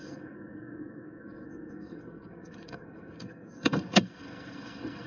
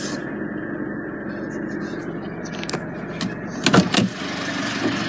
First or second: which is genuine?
second